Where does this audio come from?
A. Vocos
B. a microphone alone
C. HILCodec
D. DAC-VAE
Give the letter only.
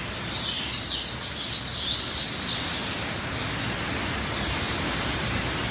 B